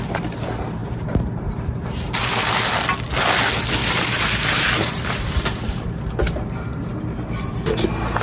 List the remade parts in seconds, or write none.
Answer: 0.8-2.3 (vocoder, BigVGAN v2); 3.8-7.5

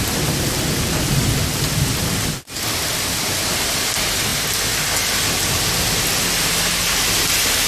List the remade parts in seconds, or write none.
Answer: none

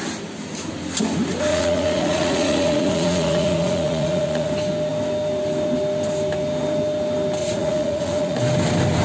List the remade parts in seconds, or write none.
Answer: 1.5-4.5 (vocoder, Vocos); 7.4-8.4

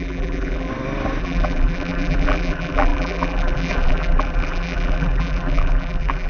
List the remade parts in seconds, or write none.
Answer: 0.0-0.7 (vocoder, BigVGAN v2); 1.2-6.3

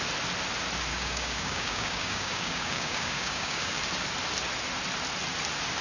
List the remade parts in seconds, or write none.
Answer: 0.9-3.8 (codec, DAC)

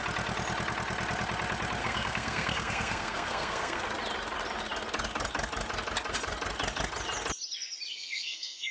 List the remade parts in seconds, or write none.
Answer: 1.8-3.8 (codec, SNAC); 7.9-8.7

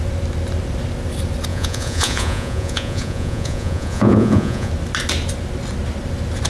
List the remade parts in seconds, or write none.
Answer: 1.5-4.7 (vocoder, Vocos)

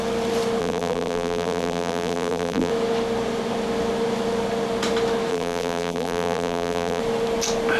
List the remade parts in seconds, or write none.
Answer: 0.6-2.7 (vocoder, BigVGAN v2); 5.3-7.0